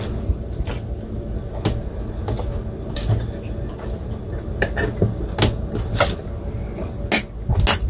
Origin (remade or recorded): recorded